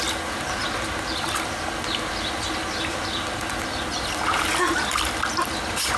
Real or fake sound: real